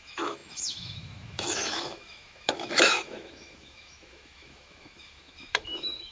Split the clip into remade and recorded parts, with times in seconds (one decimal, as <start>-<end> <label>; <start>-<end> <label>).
0.0-6.1 remade